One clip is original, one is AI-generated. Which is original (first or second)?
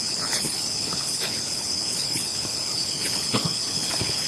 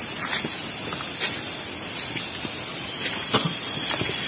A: second